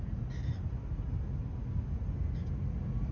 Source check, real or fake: real